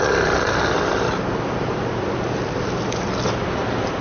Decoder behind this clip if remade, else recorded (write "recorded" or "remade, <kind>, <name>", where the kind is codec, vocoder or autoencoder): recorded